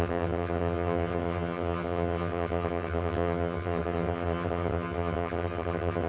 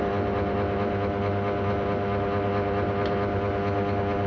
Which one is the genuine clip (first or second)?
second